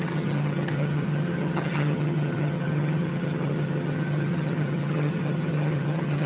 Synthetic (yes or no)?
yes